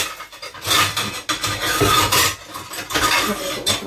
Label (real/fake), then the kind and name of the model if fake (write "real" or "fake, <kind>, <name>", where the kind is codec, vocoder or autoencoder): real